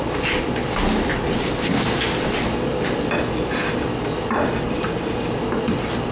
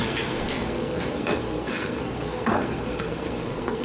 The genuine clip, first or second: first